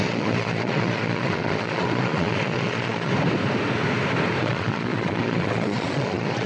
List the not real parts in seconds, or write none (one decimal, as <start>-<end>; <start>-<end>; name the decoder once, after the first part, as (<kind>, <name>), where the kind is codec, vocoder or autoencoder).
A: 0.0-3.1 (vocoder, Vocos); 4.4-6.5